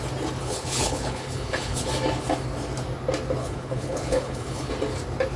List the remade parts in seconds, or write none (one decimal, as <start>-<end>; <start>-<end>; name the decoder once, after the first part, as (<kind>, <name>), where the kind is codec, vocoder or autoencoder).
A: 0.4-1.9 (codec, HILCodec); 3.4-4.7